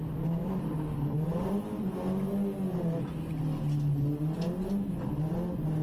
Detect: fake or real real